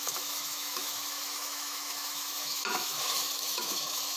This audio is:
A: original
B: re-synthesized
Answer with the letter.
B